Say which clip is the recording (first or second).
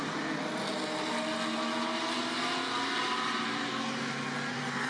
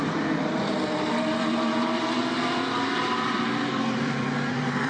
first